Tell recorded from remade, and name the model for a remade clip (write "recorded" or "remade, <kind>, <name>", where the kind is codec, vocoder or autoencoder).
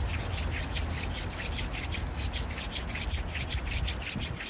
recorded